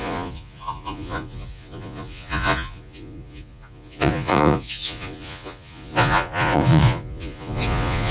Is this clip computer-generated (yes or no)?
yes